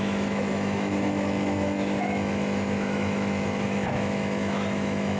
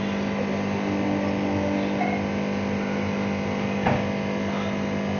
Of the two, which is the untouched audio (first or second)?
second